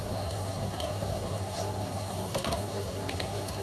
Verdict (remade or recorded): remade